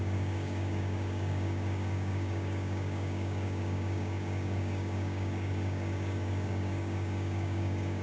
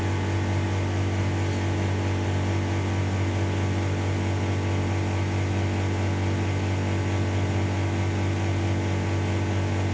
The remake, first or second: first